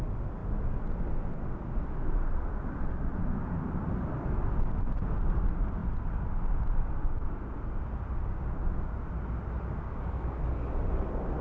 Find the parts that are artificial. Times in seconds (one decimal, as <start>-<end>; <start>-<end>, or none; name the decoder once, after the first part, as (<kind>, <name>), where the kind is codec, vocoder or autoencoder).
9.8-10.4 (codec, SNAC)